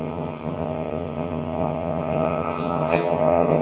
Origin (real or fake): fake